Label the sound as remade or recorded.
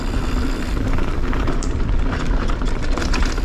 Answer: recorded